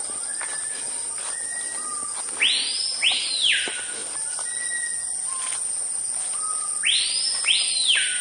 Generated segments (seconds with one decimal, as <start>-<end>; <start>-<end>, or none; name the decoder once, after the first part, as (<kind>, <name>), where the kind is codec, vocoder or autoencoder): none